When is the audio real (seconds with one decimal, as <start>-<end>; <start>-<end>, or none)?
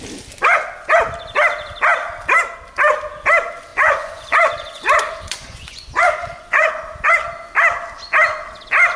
0.0-3.7; 6.7-9.0